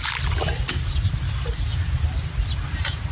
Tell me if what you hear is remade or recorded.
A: recorded